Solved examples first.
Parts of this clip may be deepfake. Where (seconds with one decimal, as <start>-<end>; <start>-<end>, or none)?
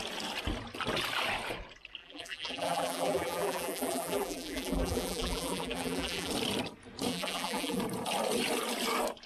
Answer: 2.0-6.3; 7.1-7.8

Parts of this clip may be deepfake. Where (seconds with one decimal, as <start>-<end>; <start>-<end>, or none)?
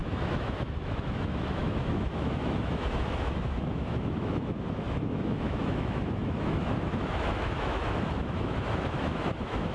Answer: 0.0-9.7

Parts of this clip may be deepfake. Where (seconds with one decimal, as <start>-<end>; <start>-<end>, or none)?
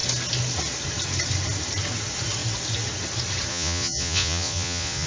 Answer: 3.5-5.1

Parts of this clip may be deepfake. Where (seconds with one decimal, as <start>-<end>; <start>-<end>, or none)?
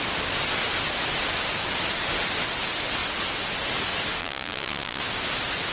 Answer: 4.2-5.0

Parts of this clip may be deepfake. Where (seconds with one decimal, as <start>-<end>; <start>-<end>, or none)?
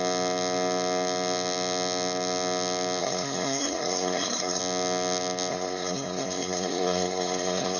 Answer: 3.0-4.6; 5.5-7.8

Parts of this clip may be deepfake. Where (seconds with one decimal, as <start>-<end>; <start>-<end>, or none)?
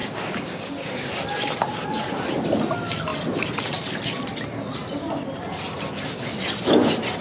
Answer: 0.0-0.9